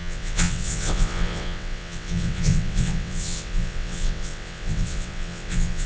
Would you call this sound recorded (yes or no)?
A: no